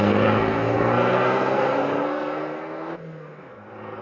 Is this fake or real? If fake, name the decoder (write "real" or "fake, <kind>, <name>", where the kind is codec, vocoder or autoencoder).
fake, codec, SNAC